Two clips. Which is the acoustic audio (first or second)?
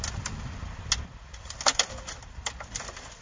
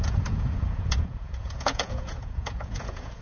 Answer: first